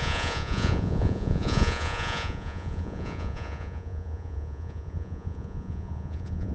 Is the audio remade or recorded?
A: remade